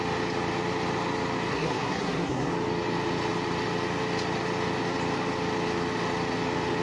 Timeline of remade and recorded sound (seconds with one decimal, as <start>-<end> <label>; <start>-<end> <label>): 0.0-1.5 recorded; 1.5-2.5 remade; 2.5-6.8 recorded